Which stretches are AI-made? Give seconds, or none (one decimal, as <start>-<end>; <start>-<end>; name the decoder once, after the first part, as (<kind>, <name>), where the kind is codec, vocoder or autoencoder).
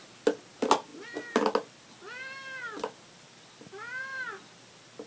none